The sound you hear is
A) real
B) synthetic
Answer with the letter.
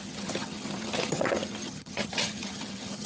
B